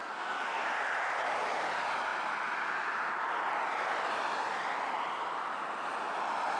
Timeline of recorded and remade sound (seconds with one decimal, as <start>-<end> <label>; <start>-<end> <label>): 0.0-0.6 remade; 0.6-6.6 recorded